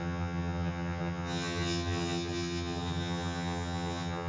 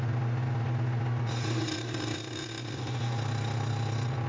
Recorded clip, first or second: second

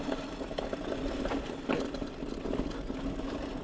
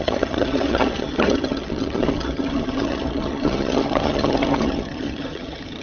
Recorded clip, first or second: first